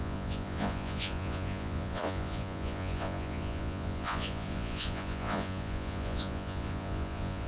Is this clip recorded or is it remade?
remade